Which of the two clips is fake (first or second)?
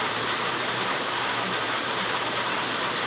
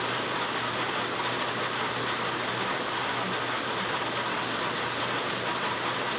first